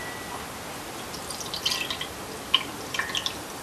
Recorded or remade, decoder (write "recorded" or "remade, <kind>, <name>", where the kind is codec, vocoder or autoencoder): recorded